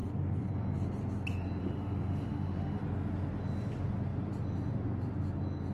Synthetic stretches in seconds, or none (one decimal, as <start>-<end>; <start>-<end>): 1.6-2.8